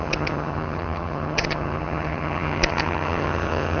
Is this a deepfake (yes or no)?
yes